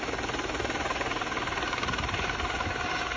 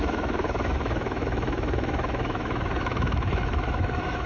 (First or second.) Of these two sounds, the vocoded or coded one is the second